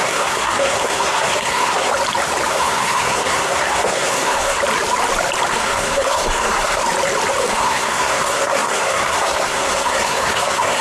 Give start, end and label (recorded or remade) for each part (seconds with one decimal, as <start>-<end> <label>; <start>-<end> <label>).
0.0-1.9 remade; 1.9-2.5 recorded; 2.5-4.6 remade; 4.6-5.5 recorded; 5.5-6.8 remade; 6.8-7.4 recorded; 7.4-10.8 remade